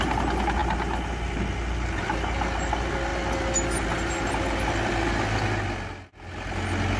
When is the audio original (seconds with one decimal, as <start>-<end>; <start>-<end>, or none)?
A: 0.0-7.0

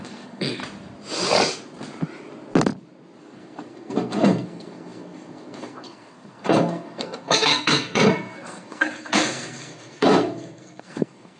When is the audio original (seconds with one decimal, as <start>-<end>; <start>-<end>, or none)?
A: 0.6-3.2